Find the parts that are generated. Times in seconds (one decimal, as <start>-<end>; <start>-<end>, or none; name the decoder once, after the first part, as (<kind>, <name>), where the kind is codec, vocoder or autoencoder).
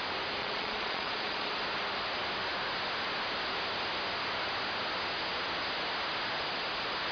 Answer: 0.4-1.5 (vocoder, Vocos)